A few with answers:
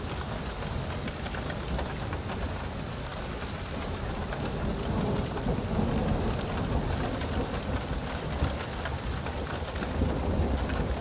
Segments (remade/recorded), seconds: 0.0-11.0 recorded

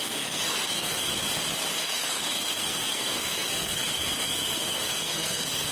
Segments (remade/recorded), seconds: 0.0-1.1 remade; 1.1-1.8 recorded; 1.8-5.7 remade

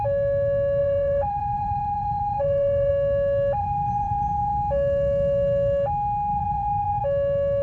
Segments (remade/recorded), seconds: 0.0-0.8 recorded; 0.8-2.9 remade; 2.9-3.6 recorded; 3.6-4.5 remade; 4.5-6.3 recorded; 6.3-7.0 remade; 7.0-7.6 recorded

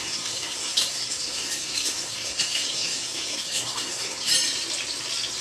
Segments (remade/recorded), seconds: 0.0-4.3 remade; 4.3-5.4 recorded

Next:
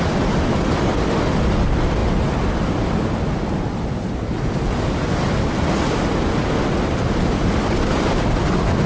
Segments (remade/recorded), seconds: 0.0-8.9 recorded

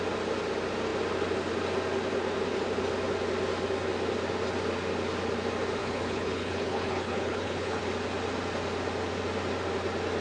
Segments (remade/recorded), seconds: 0.0-5.8 recorded; 5.8-7.8 remade; 7.8-10.2 recorded

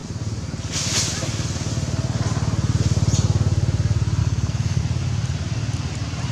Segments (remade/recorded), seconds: 0.0-4.2 recorded; 4.2-4.8 remade; 4.8-6.3 recorded

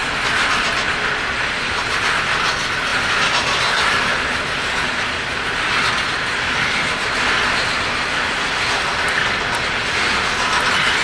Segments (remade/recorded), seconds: 0.0-11.0 recorded